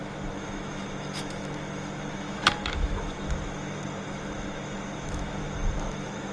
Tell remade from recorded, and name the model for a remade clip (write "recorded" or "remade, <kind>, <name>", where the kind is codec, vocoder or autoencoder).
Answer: remade, autoencoder, DAC-VAE